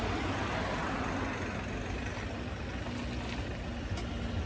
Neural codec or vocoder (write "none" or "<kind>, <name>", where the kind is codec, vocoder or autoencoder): none